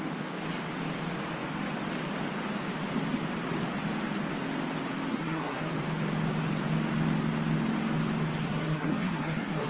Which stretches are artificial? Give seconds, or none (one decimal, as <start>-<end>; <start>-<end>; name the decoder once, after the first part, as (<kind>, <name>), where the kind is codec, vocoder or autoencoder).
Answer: 5.1-5.7 (codec, SNAC); 8.4-9.7